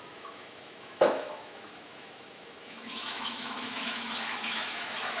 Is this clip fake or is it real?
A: fake